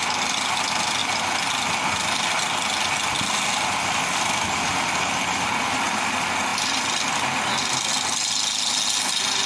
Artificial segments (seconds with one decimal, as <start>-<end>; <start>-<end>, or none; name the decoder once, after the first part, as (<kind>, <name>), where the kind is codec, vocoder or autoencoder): none

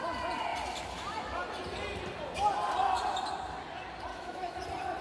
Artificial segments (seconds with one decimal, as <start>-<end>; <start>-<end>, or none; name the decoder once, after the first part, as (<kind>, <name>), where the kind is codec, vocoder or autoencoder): 4.1-4.6 (autoencoder, DAC-VAE)

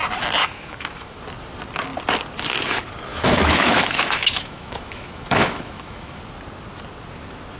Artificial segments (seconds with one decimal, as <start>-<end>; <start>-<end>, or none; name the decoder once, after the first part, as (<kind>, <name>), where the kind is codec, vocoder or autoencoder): 0.4-1.2 (autoencoder, DAC-VAE); 3.1-6.2

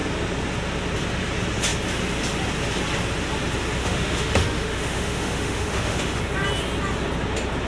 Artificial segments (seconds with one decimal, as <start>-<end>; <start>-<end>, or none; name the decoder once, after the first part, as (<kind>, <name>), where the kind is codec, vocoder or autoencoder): 3.8-6.2 (autoencoder, DAC-VAE)

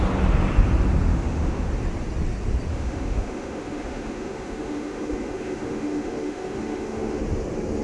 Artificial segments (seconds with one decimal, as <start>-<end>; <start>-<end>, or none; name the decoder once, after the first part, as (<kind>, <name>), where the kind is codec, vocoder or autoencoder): 1.1-1.7 (autoencoder, DAC-VAE); 2.7-7.2